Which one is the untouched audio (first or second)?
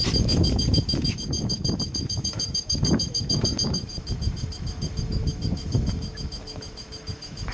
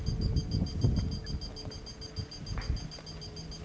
second